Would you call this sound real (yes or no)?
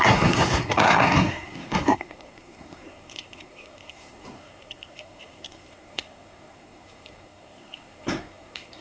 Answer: no